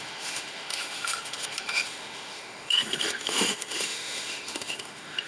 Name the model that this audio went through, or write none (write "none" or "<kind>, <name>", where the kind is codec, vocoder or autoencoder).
autoencoder, DAC-VAE